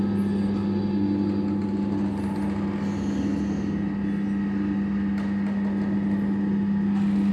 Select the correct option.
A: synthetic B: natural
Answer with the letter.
B